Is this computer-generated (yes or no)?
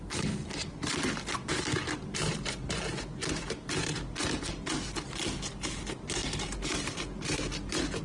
no